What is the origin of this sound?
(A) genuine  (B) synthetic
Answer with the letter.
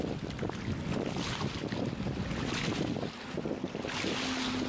A